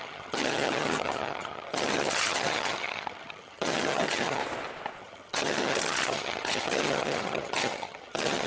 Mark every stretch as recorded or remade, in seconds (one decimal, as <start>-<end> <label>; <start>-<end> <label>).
0.0-4.4 remade; 4.4-5.0 recorded; 5.0-8.5 remade